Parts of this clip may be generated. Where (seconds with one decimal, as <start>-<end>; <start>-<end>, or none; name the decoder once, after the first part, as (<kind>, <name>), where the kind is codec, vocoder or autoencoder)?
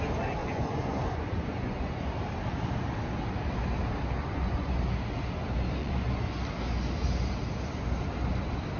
0.4-2.1 (vocoder, Vocos); 4.2-4.8; 5.8-6.3